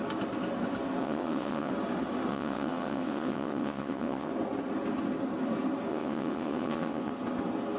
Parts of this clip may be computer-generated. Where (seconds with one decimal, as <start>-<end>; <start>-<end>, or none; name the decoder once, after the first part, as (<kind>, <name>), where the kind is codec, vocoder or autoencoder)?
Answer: 1.0-1.7 (vocoder, WaveNeXt); 2.3-4.3; 5.9-7.1